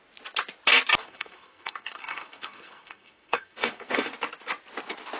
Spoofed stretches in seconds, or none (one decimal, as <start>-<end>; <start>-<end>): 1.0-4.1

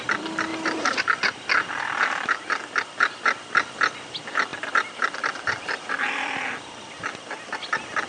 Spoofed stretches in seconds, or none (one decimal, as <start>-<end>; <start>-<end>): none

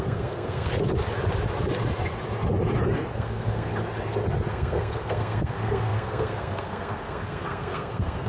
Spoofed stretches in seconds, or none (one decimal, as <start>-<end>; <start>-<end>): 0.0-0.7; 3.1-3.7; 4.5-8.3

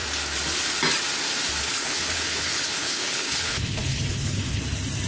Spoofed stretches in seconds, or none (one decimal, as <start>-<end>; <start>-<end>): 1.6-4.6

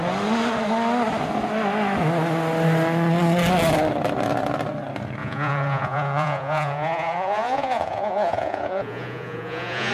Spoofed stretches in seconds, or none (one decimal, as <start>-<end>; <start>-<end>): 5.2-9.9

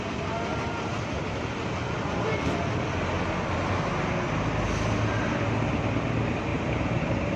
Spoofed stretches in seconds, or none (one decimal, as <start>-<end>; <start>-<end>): 6.5-7.4

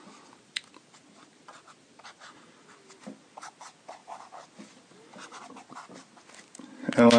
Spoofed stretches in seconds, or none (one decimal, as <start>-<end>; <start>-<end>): none